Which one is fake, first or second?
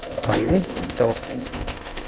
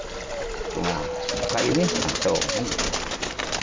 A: first